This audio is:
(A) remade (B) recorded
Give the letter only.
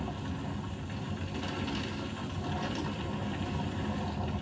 B